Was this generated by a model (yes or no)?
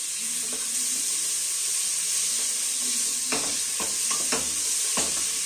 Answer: no